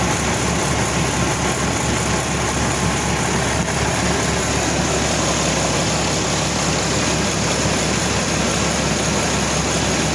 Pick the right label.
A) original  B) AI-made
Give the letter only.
A